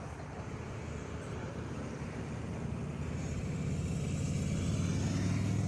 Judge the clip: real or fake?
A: real